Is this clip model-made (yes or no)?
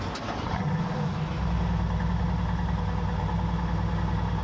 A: no